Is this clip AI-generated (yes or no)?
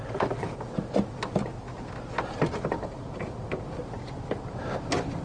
no